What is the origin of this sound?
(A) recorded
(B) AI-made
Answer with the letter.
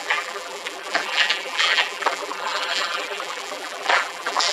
B